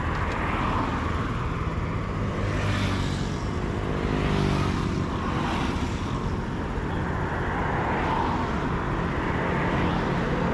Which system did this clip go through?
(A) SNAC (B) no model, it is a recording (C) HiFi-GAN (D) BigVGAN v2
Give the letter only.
B